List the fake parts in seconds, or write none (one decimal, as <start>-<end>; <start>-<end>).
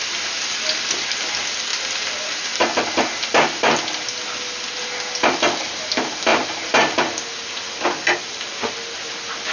6.3-7.0